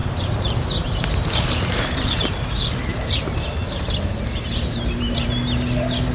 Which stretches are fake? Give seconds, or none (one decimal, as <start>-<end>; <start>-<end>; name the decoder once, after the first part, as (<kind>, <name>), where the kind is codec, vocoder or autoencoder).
0.0-2.4 (vocoder, BigVGAN v2); 2.9-5.4